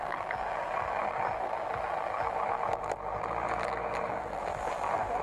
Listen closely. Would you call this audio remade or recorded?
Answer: remade